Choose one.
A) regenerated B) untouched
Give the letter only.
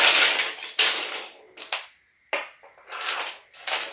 B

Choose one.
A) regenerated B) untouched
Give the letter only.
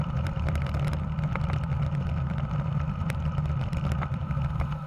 A